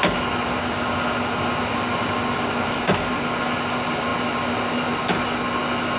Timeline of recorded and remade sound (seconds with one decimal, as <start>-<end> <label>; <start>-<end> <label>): 0.0-6.0 recorded